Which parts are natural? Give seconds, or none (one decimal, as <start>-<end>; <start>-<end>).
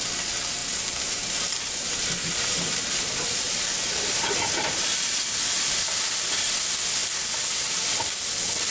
0.0-0.6; 5.8-8.7